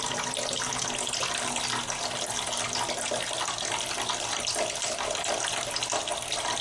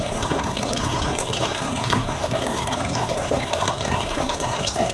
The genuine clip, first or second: first